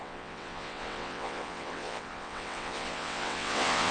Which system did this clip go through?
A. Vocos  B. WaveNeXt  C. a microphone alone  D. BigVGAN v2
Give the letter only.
B